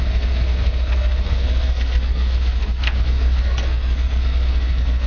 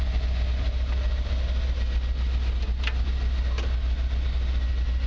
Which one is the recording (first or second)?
second